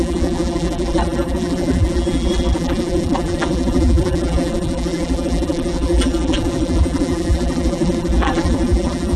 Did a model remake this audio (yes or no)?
yes